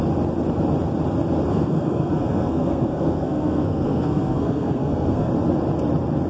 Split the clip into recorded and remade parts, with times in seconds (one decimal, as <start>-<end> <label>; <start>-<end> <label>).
0.0-1.5 recorded; 1.5-5.3 remade; 5.3-6.3 recorded